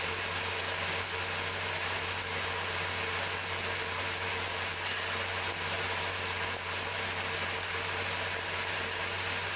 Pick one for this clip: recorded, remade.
recorded